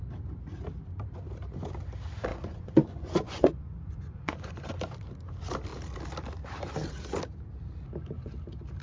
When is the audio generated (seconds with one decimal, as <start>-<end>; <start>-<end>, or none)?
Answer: 2.3-4.7